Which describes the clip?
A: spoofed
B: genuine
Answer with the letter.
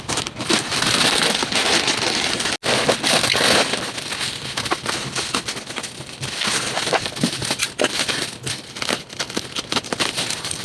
B